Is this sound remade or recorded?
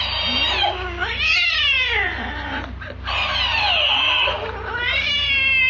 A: recorded